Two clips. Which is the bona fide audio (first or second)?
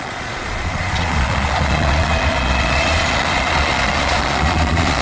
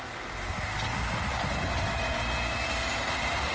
second